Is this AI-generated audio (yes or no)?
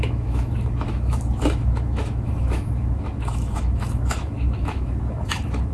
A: yes